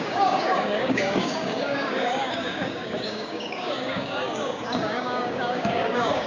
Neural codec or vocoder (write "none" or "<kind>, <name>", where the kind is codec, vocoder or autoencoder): codec, DAC